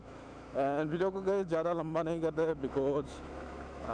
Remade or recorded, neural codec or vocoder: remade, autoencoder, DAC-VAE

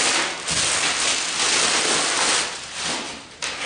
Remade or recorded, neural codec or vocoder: recorded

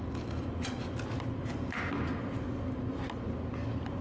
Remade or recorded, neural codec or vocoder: recorded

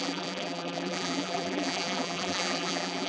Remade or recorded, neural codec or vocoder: remade, vocoder, BigVGAN v2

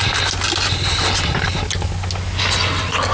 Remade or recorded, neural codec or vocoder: recorded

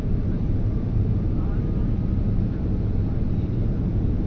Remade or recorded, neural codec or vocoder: recorded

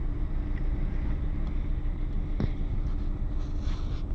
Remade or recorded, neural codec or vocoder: recorded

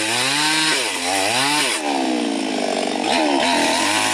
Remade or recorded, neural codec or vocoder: recorded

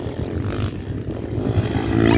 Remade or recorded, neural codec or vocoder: recorded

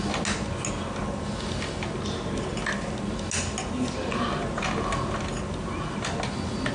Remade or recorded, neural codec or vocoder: recorded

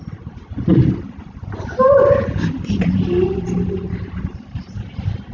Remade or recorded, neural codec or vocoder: remade, vocoder, BigVGAN v2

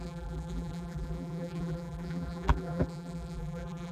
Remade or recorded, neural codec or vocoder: remade, vocoder, BigVGAN v2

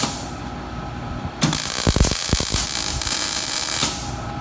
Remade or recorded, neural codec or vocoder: recorded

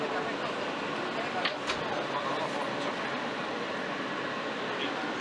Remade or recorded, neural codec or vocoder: recorded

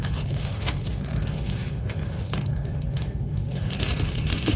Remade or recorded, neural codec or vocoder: remade, autoencoder, DAC-VAE